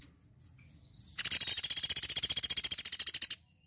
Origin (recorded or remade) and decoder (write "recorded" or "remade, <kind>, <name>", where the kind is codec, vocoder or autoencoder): recorded